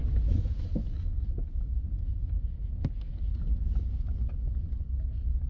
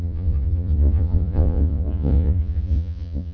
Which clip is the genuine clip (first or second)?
first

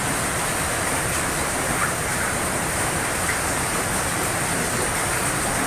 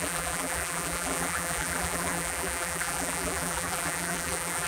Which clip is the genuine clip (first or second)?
first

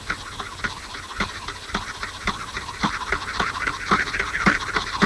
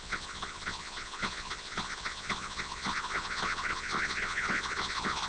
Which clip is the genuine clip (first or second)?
first